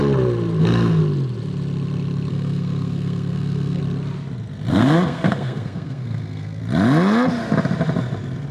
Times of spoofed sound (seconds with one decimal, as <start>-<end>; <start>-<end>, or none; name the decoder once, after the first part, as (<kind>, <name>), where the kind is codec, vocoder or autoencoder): 0.6-1.0 (codec, SNAC); 2.3-3.8; 4.7-6.6